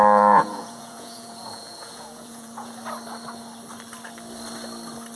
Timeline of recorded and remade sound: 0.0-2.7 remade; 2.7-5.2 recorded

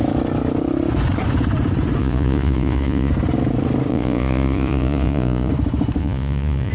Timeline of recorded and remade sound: 0.0-2.0 recorded; 2.0-3.1 remade; 3.1-3.9 recorded; 3.9-5.5 remade; 5.5-6.0 recorded; 6.0-6.7 remade

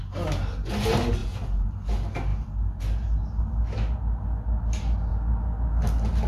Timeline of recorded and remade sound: 0.0-1.2 recorded; 1.2-1.7 remade; 1.7-6.3 recorded

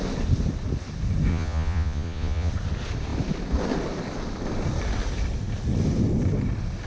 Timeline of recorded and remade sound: 0.0-1.3 recorded; 1.3-2.5 remade; 2.5-6.9 recorded

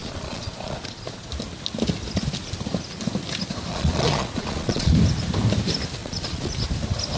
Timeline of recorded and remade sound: 0.0-1.3 remade; 1.3-3.7 recorded; 3.7-4.9 remade; 4.9-6.0 recorded; 6.0-6.5 remade; 6.5-7.2 recorded

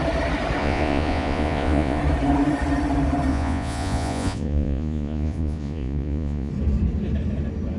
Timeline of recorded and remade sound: 0.0-0.6 recorded; 0.6-2.0 remade; 2.0-3.3 recorded; 3.3-6.5 remade; 6.5-7.8 recorded